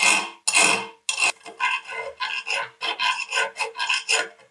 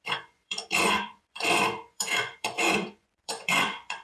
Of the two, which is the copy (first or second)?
second